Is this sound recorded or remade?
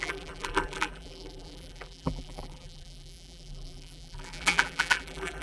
remade